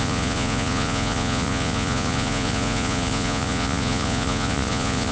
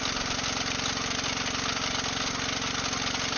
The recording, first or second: second